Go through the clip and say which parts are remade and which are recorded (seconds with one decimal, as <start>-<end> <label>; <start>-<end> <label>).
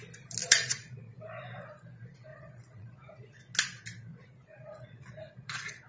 0.0-0.4 recorded; 0.4-1.1 remade; 1.1-2.3 recorded; 2.3-3.4 remade; 3.4-4.1 recorded; 4.1-5.9 remade